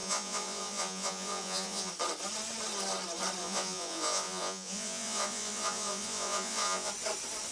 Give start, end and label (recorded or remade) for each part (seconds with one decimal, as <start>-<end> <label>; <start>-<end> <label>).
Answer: 0.0-1.9 remade; 1.9-3.4 recorded; 3.4-6.9 remade; 6.9-7.5 recorded